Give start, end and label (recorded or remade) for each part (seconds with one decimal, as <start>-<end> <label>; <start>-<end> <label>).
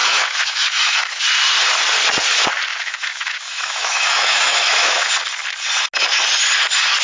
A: 0.0-1.2 remade; 1.2-2.7 recorded; 2.7-5.1 remade; 5.1-7.0 recorded